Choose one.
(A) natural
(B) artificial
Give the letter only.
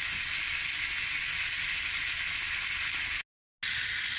A